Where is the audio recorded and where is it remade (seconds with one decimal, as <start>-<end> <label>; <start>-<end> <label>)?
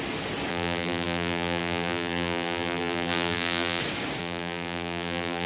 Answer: 0.0-0.5 recorded; 0.5-3.8 remade; 3.8-4.2 recorded; 4.2-5.5 remade